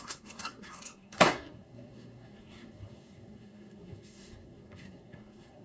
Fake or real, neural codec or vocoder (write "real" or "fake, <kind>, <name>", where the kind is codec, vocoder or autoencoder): fake, codec, SNAC